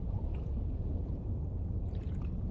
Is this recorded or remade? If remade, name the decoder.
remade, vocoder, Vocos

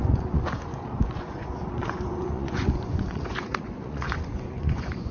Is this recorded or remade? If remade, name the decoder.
remade, vocoder, Vocos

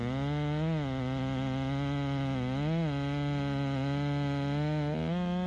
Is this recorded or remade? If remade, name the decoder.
recorded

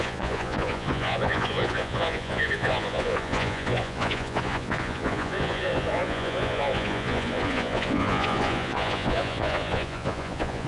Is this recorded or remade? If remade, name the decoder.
remade, vocoder, Vocos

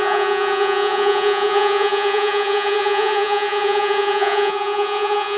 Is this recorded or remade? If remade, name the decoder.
remade, vocoder, Vocos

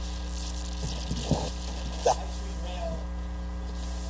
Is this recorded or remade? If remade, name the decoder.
recorded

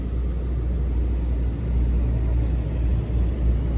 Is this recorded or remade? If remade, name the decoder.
recorded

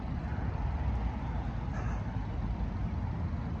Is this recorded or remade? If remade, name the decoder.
recorded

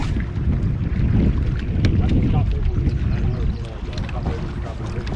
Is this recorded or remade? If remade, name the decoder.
recorded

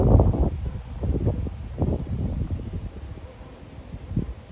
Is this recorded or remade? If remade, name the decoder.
recorded